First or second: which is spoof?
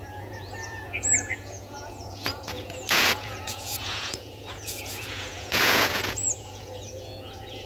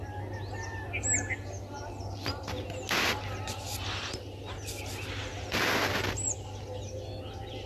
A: first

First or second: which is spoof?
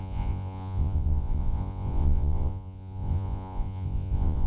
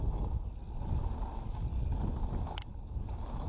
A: first